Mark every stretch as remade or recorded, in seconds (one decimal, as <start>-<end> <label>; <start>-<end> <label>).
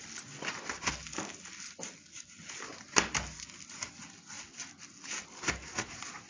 0.0-5.7 recorded; 5.7-6.3 remade